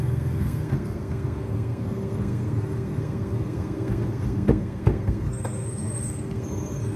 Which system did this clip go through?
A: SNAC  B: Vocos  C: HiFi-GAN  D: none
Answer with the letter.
A